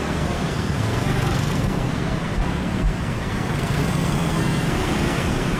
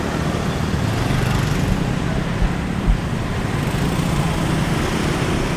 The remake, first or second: first